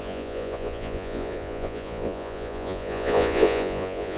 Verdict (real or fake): fake